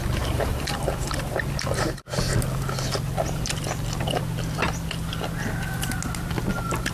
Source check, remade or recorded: recorded